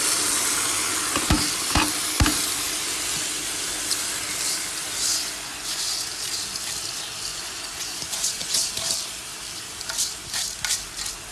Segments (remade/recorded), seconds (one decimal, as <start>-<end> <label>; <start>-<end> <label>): 0.0-5.1 recorded; 5.1-6.1 remade; 6.1-7.3 recorded; 7.3-8.7 remade; 8.7-11.3 recorded